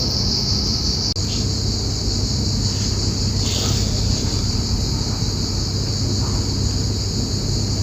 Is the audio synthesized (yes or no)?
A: no